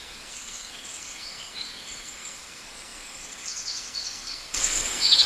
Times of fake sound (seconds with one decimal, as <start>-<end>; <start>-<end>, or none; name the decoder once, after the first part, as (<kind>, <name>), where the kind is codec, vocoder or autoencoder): 0.0-5.3 (codec, SNAC)